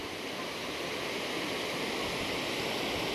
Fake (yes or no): no